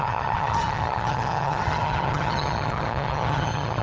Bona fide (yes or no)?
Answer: no